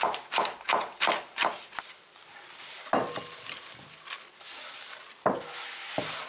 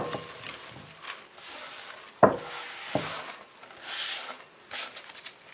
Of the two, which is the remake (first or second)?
first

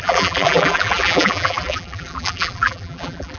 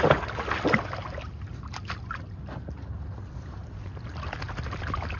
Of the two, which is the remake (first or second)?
first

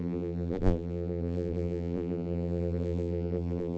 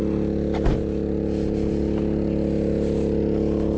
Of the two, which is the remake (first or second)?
first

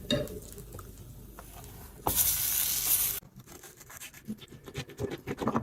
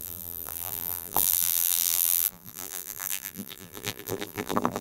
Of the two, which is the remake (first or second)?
second